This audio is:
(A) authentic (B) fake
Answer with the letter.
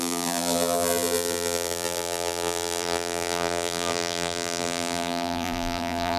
B